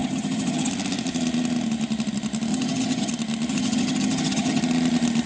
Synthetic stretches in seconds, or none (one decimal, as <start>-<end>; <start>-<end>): 0.0-0.7; 2.5-3.1; 3.5-4.6